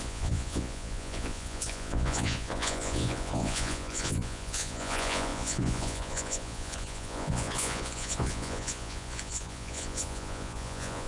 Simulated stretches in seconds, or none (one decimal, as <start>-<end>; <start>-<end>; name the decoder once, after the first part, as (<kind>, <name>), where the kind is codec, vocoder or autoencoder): 0.0-11.1 (vocoder, Vocos)